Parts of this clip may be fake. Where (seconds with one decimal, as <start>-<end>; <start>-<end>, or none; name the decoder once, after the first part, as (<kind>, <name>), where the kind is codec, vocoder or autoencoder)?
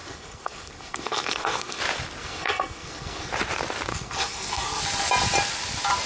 0.0-1.8 (codec, SNAC); 2.2-3.3; 3.9-4.8